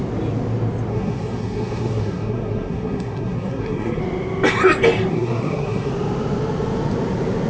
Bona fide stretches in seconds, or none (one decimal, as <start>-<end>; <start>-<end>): 0.0-0.9; 4.0-5.1; 5.9-7.5